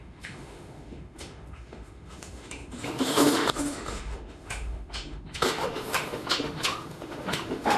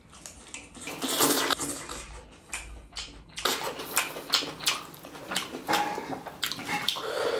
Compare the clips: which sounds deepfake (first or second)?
first